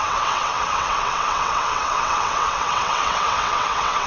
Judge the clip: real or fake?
fake